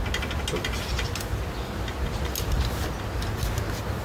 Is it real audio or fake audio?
real